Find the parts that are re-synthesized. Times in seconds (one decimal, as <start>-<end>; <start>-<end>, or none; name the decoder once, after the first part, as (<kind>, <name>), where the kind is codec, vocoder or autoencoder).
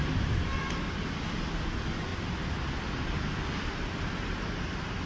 none